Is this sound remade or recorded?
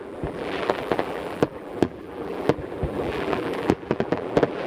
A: remade